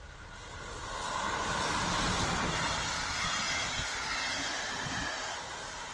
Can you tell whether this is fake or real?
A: real